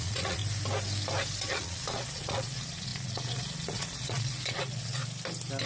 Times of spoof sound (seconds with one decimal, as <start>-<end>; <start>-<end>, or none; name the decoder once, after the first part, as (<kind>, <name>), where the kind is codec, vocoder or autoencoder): 0.0-0.4 (vocoder, Vocos); 1.5-5.0